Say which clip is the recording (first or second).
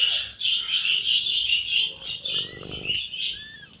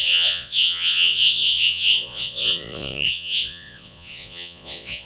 first